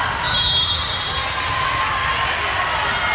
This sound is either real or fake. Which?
real